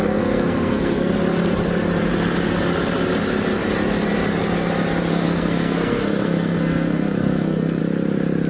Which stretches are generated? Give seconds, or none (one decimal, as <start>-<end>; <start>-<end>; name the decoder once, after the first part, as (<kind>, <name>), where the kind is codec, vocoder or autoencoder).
0.0-1.1 (codec, SNAC); 5.1-7.8